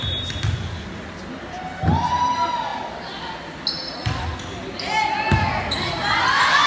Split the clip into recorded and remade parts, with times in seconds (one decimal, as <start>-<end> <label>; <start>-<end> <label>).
0.0-6.7 recorded